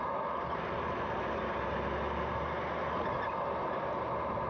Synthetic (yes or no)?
no